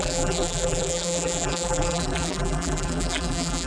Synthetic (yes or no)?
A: yes